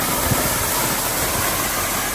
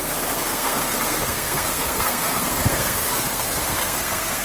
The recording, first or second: first